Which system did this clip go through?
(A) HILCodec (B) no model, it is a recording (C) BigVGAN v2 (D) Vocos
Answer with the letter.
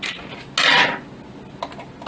B